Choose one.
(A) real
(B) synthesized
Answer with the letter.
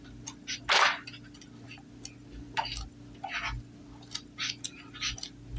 A